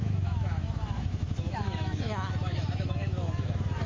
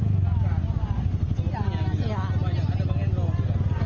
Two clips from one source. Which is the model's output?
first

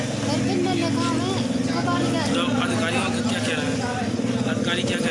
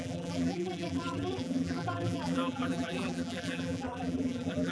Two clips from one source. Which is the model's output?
second